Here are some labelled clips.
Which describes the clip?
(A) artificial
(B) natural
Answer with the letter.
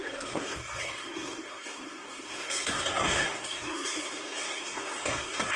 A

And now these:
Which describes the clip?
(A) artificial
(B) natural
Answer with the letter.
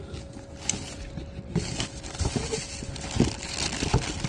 B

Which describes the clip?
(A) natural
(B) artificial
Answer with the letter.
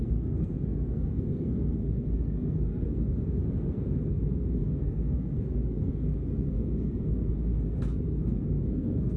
B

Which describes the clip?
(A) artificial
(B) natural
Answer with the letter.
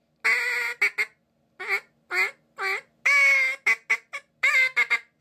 B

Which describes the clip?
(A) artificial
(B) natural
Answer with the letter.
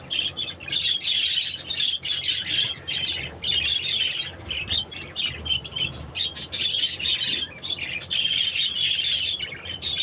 B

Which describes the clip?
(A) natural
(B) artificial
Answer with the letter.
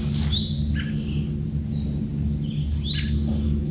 A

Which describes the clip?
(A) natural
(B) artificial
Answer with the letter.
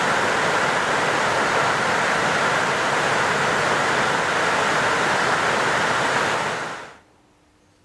A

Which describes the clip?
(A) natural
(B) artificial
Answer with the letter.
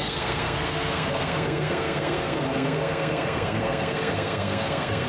B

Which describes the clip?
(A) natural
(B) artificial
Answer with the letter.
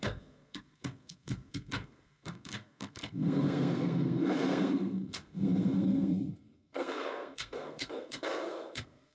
B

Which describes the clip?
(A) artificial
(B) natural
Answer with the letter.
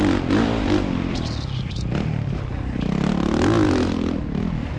B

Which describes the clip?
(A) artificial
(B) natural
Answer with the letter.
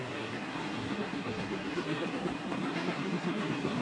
A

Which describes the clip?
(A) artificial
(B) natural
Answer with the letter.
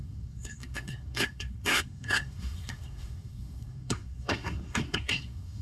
A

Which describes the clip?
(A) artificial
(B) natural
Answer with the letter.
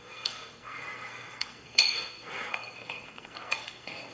A